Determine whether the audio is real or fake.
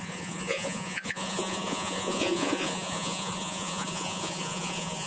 fake